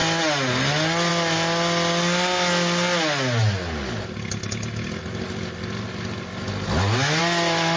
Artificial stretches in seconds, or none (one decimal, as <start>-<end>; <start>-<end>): none